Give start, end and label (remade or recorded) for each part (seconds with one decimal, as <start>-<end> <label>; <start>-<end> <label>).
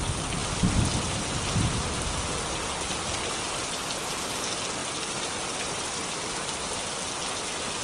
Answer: 0.0-0.4 recorded; 0.4-2.2 remade; 2.2-4.8 recorded; 4.8-6.0 remade; 6.0-7.8 recorded